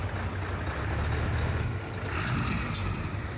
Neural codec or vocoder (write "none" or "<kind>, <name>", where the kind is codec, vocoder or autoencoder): none